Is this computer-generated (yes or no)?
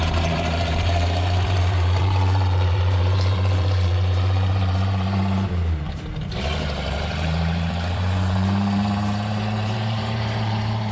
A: yes